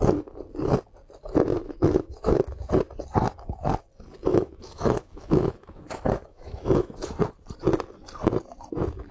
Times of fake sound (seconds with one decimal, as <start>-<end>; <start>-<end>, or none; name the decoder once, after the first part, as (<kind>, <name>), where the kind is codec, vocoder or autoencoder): 1.5-2.7 (autoencoder, DAC-VAE); 4.3-7.2

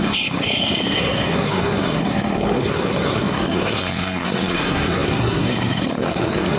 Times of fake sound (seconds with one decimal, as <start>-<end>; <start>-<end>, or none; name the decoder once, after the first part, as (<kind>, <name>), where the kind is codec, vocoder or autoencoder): 0.0-6.6 (codec, SNAC)